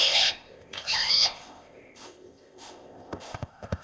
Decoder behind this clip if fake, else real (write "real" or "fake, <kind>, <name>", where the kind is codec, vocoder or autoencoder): fake, codec, ZipCodec